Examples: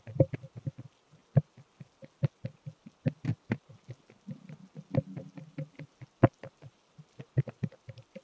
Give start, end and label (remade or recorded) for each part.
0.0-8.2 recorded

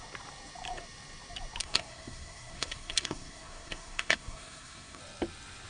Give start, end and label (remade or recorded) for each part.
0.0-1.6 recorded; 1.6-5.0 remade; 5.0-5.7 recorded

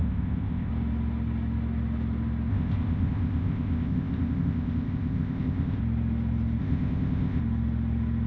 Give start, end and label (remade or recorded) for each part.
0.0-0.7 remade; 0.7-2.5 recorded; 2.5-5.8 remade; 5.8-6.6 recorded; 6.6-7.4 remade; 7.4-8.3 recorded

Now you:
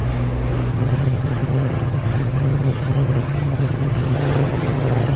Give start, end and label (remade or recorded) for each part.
0.0-0.7 recorded; 0.7-5.2 remade

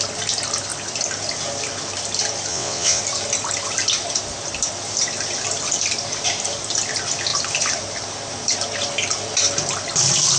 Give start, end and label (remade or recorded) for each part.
0.0-2.5 recorded; 2.5-3.0 remade; 3.0-10.4 recorded